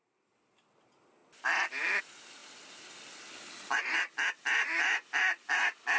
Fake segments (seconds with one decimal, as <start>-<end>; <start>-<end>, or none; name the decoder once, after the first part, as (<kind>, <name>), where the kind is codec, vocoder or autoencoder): none